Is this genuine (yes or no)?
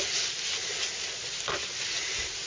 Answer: yes